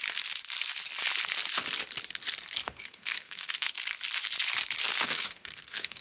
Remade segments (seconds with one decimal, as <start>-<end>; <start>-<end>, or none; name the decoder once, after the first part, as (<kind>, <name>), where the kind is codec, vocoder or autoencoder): 2.6-3.7 (codec, SNAC); 4.9-6.0